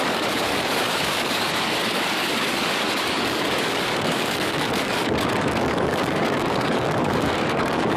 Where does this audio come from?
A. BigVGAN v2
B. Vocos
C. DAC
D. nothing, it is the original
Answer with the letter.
C